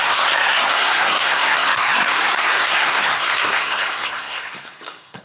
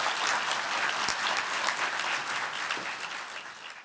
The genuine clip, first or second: second